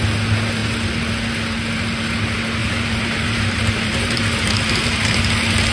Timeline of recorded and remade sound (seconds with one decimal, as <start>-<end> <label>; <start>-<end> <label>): 0.0-2.6 recorded; 2.6-5.2 remade; 5.2-5.7 recorded